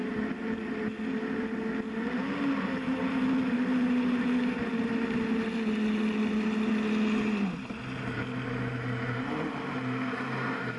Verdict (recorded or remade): recorded